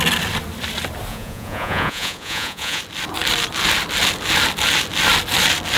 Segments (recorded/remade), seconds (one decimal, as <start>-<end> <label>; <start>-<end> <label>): 0.0-1.1 recorded; 1.1-2.8 remade; 2.8-5.8 recorded